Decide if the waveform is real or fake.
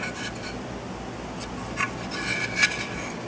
real